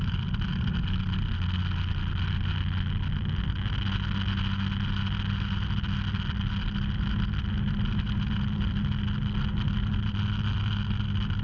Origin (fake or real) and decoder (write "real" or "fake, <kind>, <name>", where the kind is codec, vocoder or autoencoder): real